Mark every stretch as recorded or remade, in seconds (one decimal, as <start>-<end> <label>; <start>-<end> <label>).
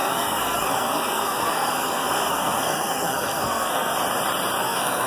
0.0-3.9 remade; 3.9-4.6 recorded; 4.6-5.1 remade